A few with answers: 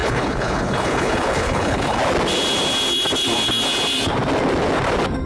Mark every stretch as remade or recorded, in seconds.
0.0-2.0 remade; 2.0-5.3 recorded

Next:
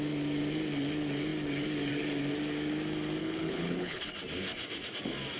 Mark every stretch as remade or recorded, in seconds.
0.0-3.2 recorded; 3.2-4.0 remade; 4.0-5.4 recorded

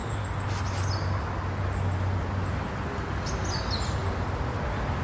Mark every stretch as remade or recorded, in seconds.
0.0-5.0 recorded

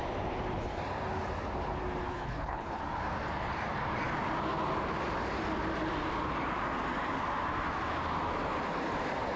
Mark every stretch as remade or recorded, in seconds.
0.0-2.1 recorded; 2.1-2.8 remade; 2.8-9.4 recorded

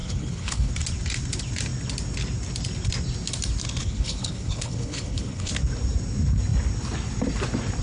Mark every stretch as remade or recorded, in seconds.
0.0-0.7 remade; 0.7-3.8 recorded; 3.8-5.5 remade; 5.5-7.8 recorded

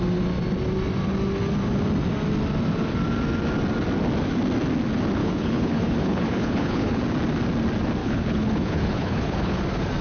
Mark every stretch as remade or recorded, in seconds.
0.0-5.2 recorded; 5.2-7.0 remade; 7.0-8.0 recorded; 8.0-9.6 remade; 9.6-10.0 recorded

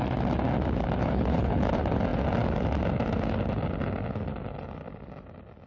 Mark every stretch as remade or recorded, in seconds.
0.0-1.0 recorded; 1.0-1.6 remade; 1.6-5.7 recorded